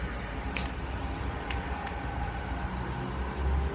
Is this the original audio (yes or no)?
yes